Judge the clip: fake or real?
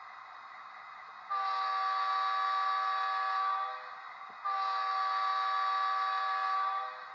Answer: real